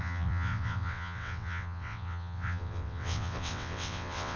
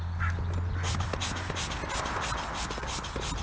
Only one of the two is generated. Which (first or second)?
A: first